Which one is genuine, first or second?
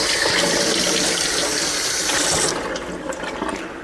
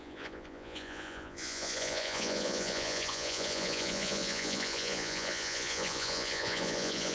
first